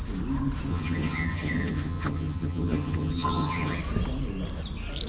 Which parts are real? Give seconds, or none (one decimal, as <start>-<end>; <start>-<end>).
0.0-0.7; 3.8-5.1